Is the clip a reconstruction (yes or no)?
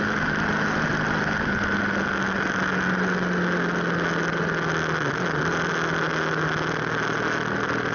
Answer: no